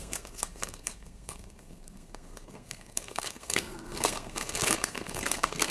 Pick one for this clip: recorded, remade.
remade